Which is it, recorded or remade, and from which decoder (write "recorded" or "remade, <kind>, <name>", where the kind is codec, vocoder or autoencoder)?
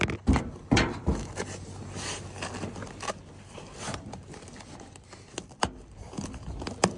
recorded